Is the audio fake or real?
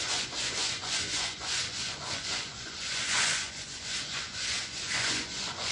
fake